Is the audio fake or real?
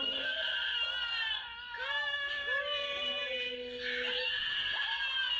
real